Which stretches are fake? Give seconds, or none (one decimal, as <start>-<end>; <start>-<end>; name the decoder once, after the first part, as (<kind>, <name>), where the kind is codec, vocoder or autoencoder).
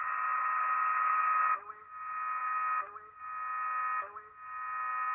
none